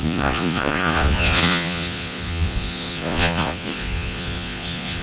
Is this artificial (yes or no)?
yes